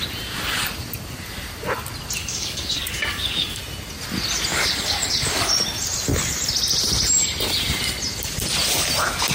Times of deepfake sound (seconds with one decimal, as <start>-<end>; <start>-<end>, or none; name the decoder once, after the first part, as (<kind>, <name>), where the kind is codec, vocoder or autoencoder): 2.2-3.6 (codec, DAC); 4.5-5.5